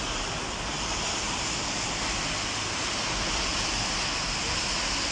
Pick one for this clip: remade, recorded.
recorded